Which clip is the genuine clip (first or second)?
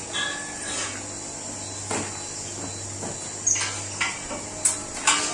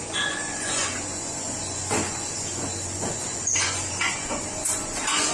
first